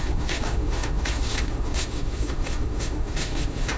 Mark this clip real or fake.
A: fake